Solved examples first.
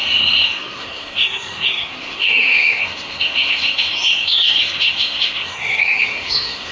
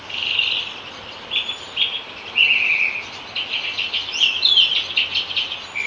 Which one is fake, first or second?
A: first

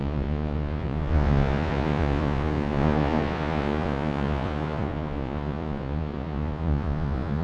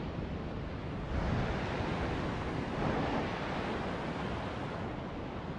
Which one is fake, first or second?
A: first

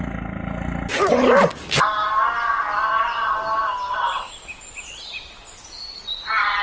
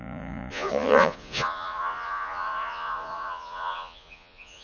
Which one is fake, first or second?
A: second